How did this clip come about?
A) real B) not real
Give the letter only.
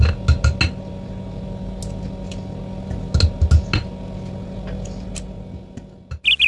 A